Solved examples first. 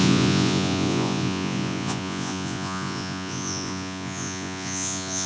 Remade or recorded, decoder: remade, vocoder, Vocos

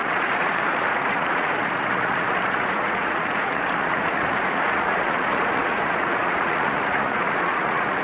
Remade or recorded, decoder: remade, vocoder, Vocos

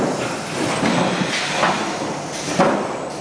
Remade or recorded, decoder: remade, vocoder, BigVGAN v2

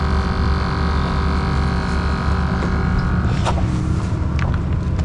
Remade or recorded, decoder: recorded